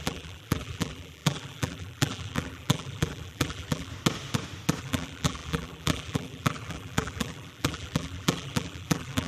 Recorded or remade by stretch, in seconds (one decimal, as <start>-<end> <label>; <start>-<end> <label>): 0.0-3.9 remade; 3.9-4.8 recorded; 4.8-9.3 remade